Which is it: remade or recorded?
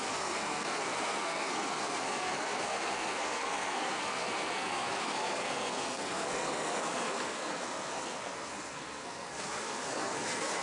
remade